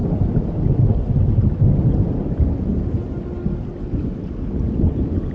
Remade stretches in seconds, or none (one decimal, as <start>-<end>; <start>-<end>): none